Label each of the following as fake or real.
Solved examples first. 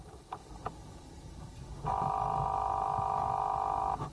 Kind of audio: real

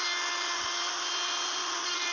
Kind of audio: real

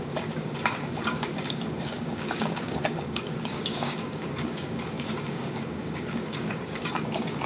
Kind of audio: fake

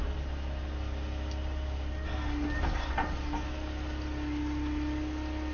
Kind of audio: real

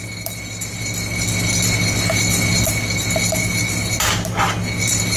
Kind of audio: real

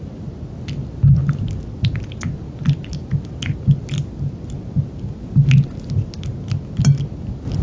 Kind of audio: real